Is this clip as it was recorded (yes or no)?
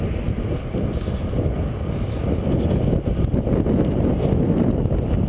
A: yes